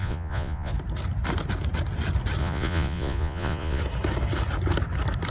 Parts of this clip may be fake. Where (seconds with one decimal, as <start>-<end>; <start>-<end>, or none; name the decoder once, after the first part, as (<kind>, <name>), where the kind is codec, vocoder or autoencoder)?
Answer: 0.0-0.7 (vocoder, Vocos); 2.4-3.8